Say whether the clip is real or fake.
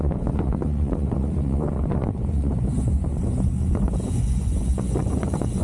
fake